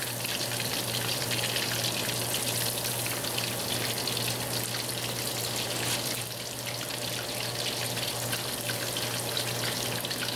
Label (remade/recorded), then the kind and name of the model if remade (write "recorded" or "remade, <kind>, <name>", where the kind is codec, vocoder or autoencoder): recorded